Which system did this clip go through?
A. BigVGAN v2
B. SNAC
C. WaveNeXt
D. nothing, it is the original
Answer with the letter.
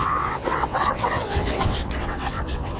C